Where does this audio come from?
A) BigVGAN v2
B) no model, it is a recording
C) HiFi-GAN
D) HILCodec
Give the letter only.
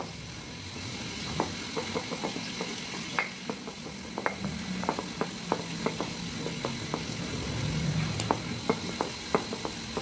B